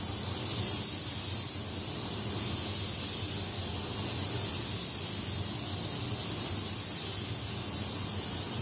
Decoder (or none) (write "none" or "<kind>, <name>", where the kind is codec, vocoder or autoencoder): none